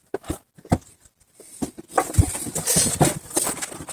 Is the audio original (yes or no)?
yes